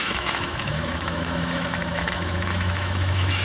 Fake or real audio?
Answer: fake